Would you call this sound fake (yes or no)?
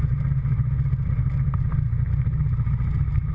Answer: no